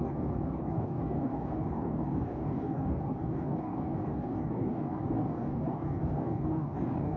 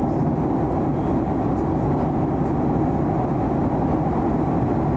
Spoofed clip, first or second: first